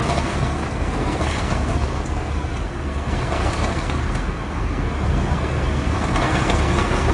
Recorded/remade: remade